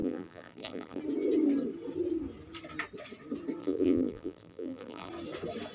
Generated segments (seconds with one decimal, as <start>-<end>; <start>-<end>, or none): 0.0-1.0; 3.6-5.1